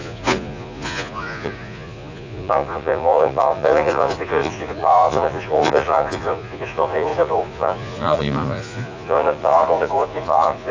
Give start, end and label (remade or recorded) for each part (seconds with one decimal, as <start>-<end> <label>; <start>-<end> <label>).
0.0-10.7 remade